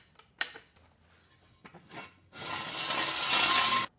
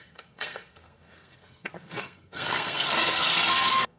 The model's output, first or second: second